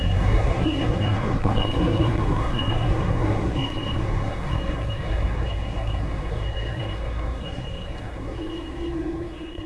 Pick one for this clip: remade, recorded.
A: remade